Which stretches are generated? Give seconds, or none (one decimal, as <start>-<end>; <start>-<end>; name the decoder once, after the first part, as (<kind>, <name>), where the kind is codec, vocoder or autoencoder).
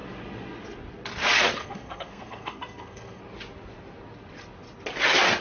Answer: 1.6-3.2 (codec, SNAC)